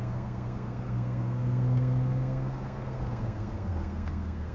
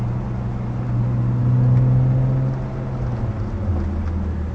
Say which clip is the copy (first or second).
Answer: first